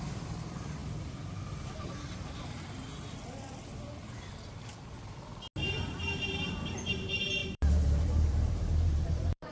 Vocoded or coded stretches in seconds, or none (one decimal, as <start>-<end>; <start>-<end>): 7.4-9.5